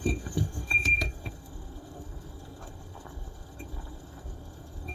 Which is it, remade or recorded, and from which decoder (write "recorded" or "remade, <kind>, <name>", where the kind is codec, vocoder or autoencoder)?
remade, codec, SNAC